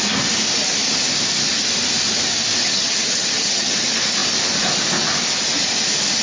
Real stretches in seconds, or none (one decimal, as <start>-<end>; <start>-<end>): 0.0-2.6; 3.7-6.2